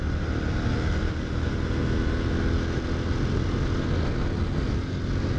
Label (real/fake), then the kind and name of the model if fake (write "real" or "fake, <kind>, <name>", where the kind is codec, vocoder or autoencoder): real